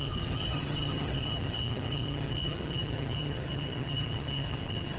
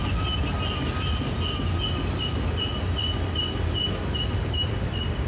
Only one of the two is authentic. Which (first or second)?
second